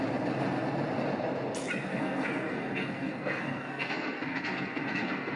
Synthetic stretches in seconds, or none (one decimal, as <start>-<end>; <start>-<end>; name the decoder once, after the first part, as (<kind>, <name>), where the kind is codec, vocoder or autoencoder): 1.9-5.4 (codec, SNAC)